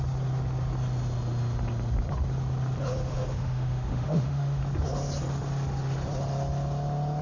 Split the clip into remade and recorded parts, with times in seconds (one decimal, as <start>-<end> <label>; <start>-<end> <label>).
0.0-3.1 recorded; 3.1-4.6 remade; 4.6-7.2 recorded